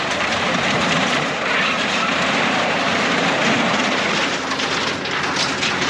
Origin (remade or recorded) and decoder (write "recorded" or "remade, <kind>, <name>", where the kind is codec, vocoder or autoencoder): recorded